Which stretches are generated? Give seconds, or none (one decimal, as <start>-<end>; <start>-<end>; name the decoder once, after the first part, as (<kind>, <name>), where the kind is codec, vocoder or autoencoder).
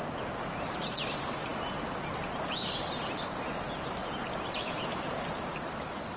none